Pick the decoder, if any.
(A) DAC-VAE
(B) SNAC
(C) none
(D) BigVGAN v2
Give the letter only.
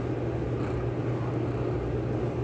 C